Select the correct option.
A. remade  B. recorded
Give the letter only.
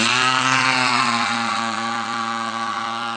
A